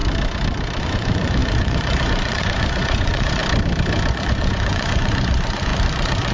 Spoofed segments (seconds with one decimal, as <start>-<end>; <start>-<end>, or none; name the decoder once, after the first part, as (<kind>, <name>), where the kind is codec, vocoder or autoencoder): 0.8-3.4 (vocoder, Vocos); 4.1-6.3

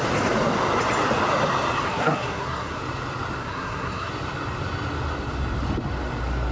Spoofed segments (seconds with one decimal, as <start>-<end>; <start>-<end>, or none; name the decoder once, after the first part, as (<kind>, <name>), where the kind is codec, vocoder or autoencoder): 1.8-2.8 (codec, SNAC); 3.4-4.1